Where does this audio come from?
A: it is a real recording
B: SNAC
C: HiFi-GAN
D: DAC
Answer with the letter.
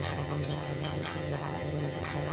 C